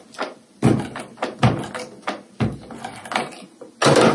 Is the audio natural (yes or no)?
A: yes